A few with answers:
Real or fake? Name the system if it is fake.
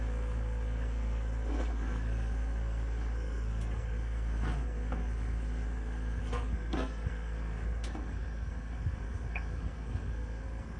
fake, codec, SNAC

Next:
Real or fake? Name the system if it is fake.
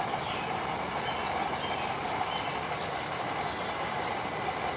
real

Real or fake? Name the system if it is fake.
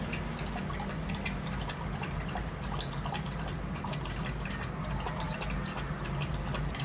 real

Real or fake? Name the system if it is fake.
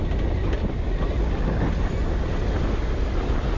real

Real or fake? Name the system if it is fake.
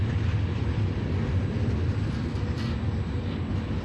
real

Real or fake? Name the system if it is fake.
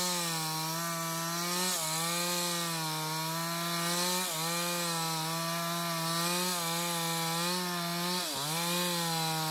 real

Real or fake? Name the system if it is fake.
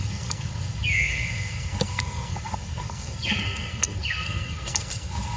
fake, codec, SNAC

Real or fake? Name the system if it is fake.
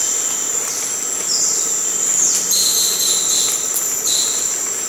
real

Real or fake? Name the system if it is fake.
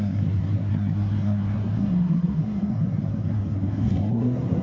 fake, codec, SNAC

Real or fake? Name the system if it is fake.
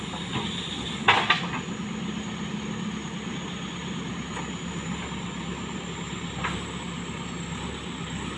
real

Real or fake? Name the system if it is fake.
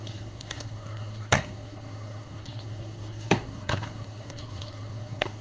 fake, codec, SNAC